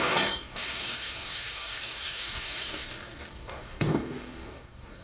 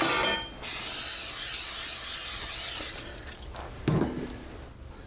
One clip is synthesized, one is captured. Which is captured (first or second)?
second